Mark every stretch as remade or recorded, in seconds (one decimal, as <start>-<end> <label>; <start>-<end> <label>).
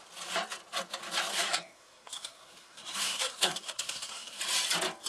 0.0-1.3 recorded; 1.3-4.4 remade; 4.4-5.1 recorded